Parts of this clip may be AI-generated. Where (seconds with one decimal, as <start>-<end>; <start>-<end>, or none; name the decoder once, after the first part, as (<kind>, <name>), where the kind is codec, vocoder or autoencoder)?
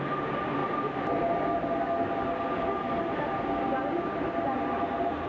none